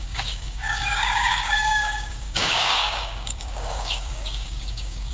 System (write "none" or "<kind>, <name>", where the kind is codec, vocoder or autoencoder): codec, DAC